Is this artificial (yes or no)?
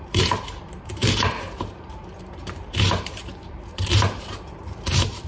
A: yes